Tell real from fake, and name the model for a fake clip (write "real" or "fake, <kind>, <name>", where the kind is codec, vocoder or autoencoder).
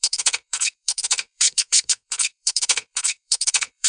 fake, codec, SNAC